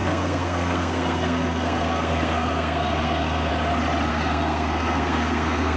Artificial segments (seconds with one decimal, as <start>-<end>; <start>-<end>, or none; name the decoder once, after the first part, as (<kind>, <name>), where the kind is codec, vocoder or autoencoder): 0.0-3.5 (codec, SNAC); 4.1-5.8